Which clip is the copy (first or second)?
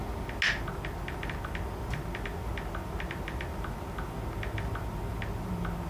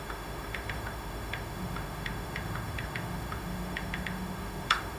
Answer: second